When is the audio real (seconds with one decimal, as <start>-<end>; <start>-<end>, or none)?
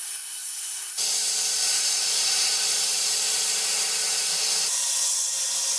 0.0-0.4; 3.9-5.8